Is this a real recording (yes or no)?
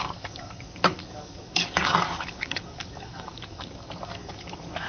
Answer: no